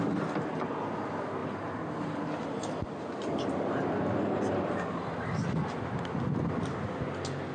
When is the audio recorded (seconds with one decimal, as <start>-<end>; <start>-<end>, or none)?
0.0-7.5